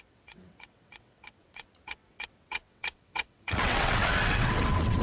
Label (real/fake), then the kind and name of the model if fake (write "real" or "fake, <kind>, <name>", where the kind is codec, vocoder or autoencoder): fake, vocoder, WaveNeXt